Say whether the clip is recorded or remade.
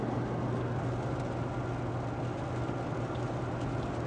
recorded